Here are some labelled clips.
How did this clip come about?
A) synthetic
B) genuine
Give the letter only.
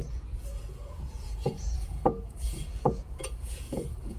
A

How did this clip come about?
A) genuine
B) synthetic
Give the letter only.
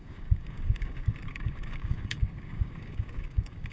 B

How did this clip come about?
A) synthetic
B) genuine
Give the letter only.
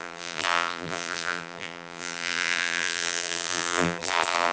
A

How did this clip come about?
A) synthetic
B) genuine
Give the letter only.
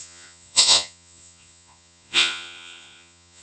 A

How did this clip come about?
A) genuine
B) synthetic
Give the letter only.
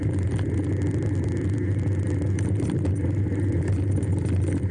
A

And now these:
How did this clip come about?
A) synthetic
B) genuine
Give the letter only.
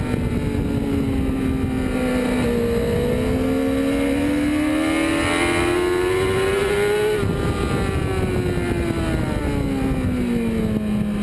B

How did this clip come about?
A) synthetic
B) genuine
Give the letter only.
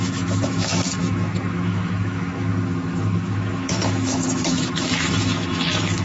A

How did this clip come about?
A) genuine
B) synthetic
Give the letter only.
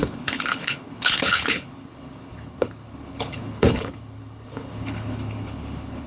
B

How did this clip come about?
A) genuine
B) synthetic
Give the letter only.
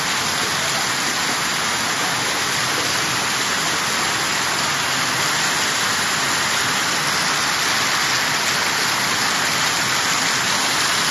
A